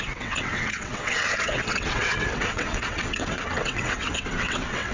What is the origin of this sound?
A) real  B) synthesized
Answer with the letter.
B